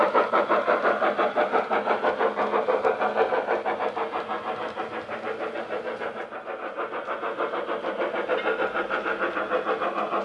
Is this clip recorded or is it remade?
recorded